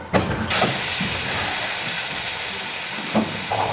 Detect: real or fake real